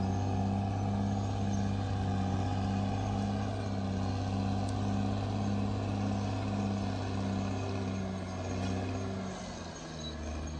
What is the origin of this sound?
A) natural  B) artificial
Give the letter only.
A